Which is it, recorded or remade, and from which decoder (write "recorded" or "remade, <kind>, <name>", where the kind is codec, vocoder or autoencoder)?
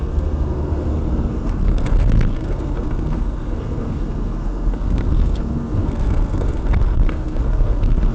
remade, codec, SNAC